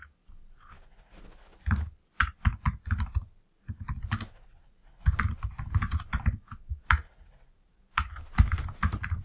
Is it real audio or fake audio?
real